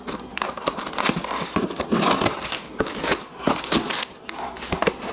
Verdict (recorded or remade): recorded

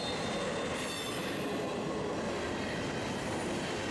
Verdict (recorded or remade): recorded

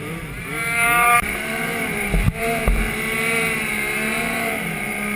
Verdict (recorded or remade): remade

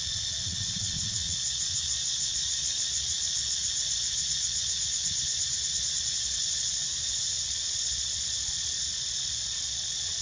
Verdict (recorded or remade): remade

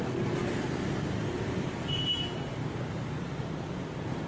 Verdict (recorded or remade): recorded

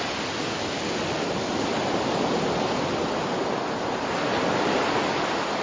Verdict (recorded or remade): remade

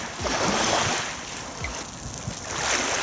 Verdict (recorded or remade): recorded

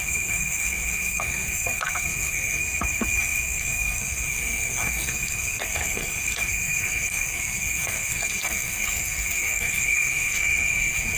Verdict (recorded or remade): remade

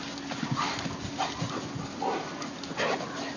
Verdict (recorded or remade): recorded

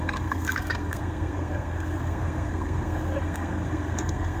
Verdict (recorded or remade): remade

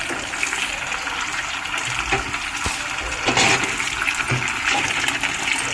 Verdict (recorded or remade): recorded